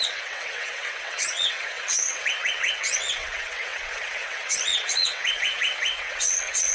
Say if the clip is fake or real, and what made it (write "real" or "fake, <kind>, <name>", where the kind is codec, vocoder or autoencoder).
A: fake, vocoder, WaveNeXt